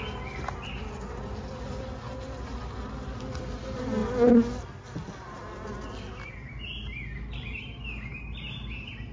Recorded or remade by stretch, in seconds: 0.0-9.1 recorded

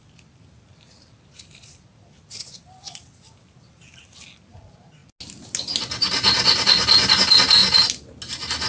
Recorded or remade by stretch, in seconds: 0.0-8.7 recorded